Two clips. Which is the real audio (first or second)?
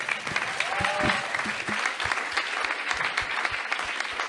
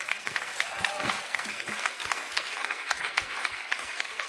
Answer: first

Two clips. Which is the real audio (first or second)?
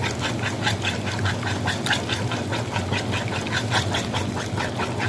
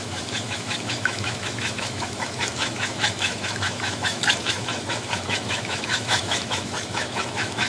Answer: first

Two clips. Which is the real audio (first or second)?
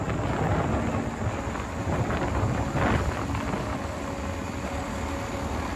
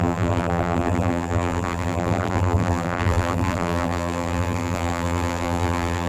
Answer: first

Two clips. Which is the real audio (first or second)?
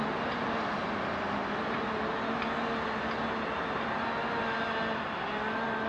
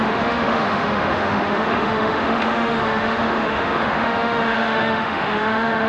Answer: first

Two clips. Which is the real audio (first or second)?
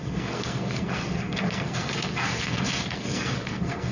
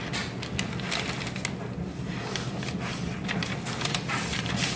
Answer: second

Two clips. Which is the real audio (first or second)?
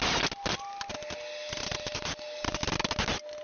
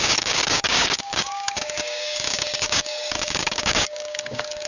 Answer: first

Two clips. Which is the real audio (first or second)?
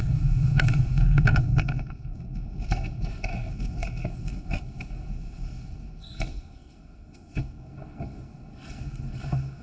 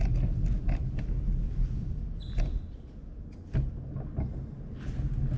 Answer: second